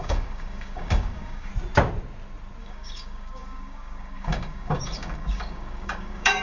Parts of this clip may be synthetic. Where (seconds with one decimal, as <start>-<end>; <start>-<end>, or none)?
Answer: 0.0-1.5; 2.6-6.4